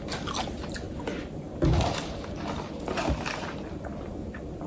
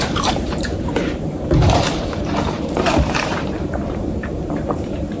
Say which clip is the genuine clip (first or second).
first